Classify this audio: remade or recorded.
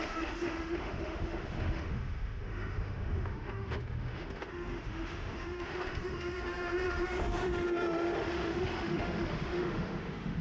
remade